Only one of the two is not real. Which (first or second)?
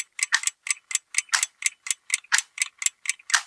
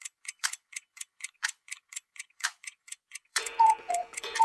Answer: second